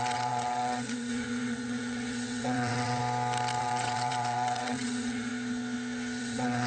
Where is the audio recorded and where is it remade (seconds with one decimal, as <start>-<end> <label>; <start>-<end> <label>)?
0.0-3.0 remade; 3.0-3.6 recorded; 3.6-5.3 remade; 5.3-6.2 recorded; 6.2-6.7 remade

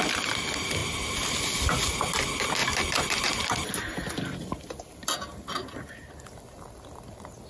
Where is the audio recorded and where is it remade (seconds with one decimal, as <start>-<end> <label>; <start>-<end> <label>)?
0.0-7.5 recorded